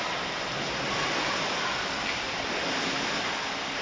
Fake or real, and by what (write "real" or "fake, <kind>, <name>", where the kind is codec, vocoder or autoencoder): real